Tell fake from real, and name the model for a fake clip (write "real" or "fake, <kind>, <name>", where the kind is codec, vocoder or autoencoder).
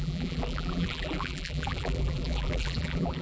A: fake, vocoder, BigVGAN v2